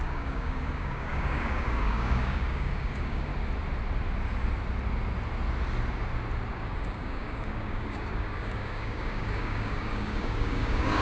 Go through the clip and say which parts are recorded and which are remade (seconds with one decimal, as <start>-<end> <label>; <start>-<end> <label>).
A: 0.0-3.3 remade; 3.3-6.5 recorded; 6.5-11.0 remade